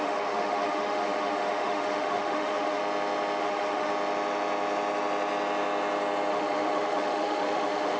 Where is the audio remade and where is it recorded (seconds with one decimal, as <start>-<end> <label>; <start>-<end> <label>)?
0.0-2.8 remade; 2.8-3.4 recorded; 3.4-3.9 remade; 3.9-6.3 recorded; 6.3-8.0 remade